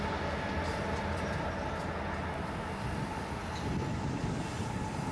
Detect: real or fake real